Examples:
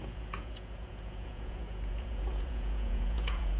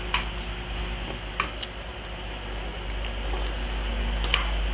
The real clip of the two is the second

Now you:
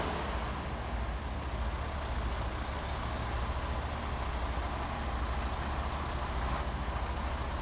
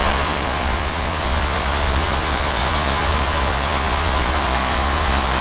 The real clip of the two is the first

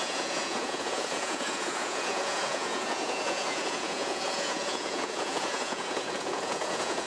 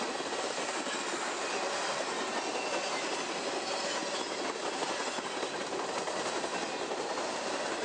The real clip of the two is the second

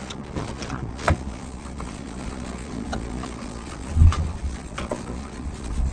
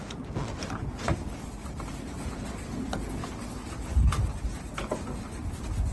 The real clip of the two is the second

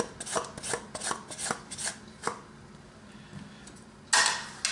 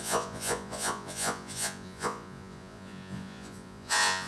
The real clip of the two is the first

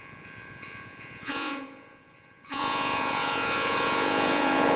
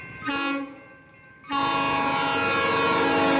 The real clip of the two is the second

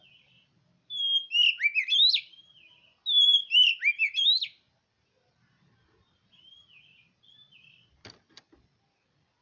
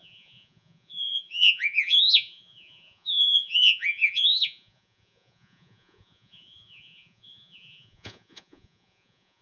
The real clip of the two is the first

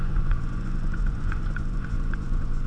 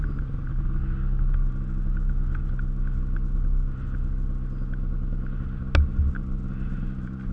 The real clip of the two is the second